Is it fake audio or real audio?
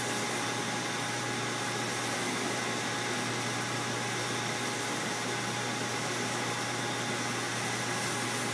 real